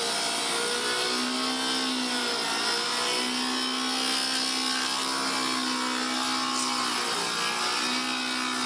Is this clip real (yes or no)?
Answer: yes